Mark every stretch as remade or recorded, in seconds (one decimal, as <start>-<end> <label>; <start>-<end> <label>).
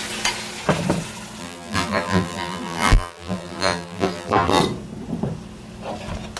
0.0-1.4 recorded; 1.4-4.6 remade; 4.6-6.4 recorded